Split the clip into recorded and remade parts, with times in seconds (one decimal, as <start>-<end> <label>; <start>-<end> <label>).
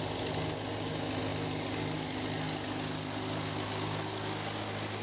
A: 0.0-5.0 recorded